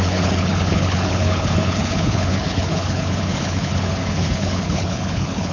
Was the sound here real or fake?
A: fake